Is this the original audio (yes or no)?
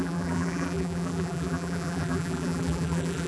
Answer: no